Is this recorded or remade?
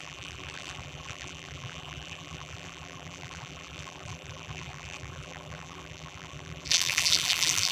remade